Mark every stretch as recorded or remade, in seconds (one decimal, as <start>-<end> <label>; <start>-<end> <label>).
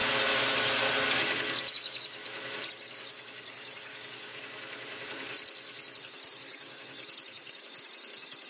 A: 0.0-1.7 recorded; 1.7-2.2 remade; 2.2-2.7 recorded; 2.7-4.3 remade; 4.3-6.0 recorded; 6.0-8.5 remade